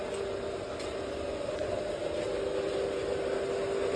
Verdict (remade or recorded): recorded